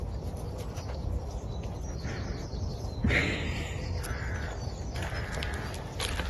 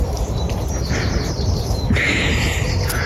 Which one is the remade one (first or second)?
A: second